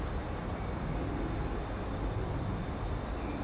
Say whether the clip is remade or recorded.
recorded